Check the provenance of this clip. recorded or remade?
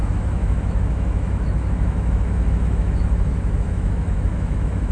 remade